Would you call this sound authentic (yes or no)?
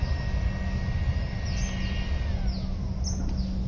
yes